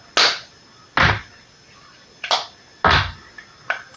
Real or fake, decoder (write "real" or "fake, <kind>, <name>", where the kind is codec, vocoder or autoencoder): real